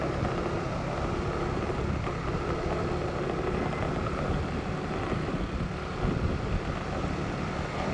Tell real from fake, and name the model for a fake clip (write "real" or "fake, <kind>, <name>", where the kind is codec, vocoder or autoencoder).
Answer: real